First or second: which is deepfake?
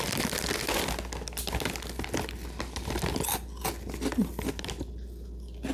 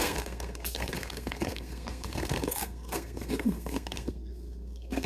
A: second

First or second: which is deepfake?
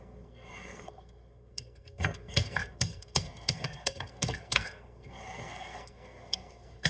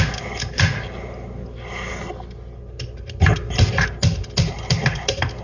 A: first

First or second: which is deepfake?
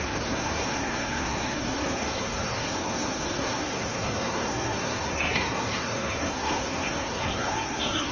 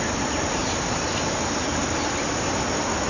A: first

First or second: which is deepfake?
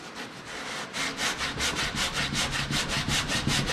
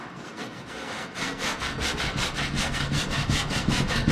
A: second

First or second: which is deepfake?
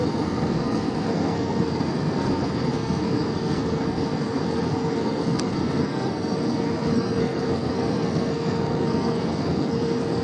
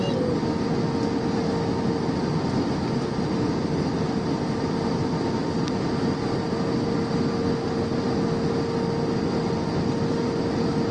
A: first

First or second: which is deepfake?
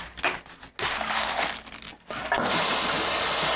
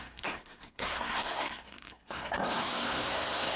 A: second